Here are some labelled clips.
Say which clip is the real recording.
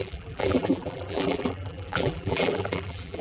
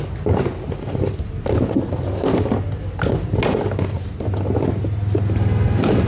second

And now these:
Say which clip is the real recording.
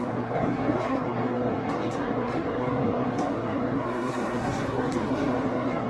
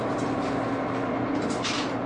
second